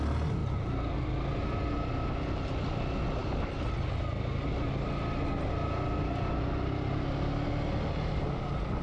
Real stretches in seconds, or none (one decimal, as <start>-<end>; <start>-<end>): 0.0-8.8